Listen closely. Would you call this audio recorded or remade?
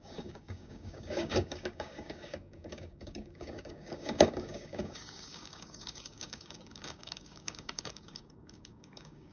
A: remade